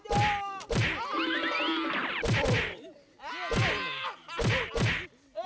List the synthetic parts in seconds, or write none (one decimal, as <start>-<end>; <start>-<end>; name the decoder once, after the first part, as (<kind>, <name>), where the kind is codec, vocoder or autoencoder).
none